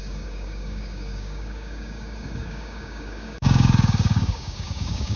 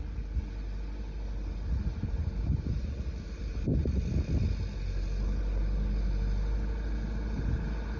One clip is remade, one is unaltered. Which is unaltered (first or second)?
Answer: second